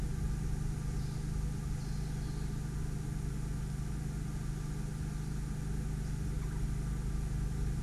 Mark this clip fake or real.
real